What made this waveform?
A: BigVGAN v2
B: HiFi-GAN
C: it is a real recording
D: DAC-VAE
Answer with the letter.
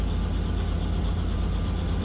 C